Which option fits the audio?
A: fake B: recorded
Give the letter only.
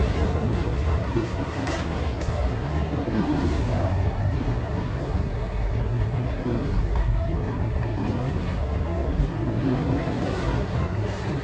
A